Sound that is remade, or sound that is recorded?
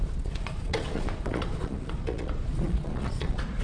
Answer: remade